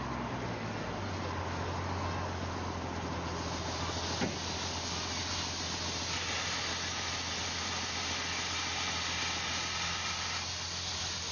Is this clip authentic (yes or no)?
yes